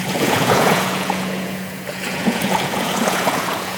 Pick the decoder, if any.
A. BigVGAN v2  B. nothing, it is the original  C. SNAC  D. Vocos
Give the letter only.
D